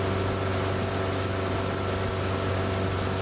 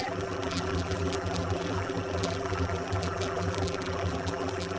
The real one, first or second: first